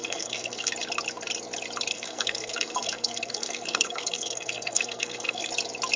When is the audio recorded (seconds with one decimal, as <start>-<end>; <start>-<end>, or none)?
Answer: 0.7-1.9; 5.5-6.0